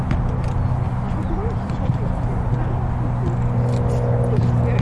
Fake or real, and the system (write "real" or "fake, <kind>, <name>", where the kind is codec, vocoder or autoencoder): real